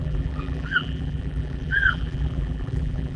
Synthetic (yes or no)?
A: yes